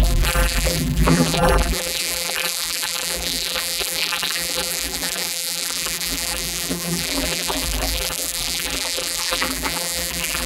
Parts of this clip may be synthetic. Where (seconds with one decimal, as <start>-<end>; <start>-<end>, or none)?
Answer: 0.0-10.5